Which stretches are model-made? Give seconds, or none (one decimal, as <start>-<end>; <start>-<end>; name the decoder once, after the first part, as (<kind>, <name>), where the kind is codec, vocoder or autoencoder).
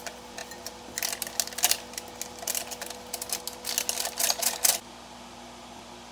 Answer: none